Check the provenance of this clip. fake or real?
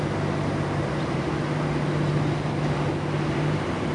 real